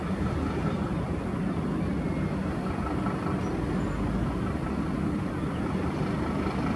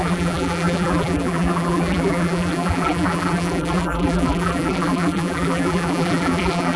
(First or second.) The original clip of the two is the first